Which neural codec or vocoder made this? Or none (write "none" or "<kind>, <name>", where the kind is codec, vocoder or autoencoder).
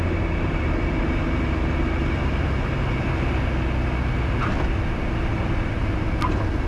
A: none